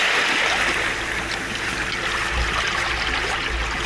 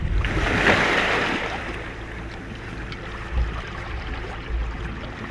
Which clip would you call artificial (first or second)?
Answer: second